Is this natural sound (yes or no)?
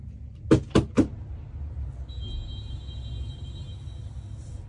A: yes